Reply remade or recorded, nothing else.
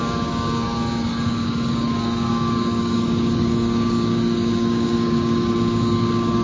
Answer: remade